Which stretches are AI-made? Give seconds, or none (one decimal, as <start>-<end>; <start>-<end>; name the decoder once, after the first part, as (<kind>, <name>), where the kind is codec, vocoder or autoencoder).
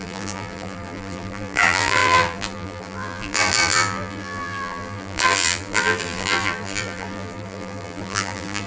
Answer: 0.0-8.7 (vocoder, BigVGAN v2)